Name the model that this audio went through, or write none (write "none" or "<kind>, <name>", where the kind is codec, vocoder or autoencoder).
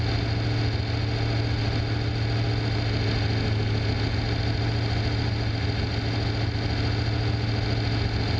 none